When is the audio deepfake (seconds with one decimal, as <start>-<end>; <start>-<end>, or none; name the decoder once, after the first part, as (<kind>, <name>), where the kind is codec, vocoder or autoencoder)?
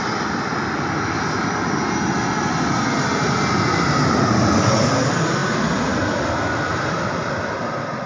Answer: none